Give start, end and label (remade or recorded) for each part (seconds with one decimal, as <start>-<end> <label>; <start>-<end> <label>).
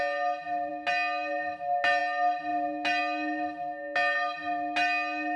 0.0-5.4 recorded